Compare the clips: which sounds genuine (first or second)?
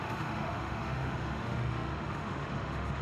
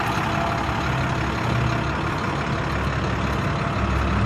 second